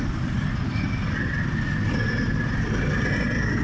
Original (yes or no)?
yes